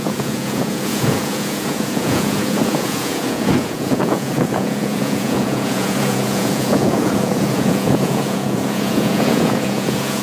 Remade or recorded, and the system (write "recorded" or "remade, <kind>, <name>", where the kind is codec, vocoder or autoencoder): remade, vocoder, Vocos